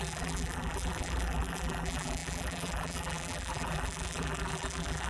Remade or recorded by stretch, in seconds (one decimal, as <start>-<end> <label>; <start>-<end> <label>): 0.0-5.1 remade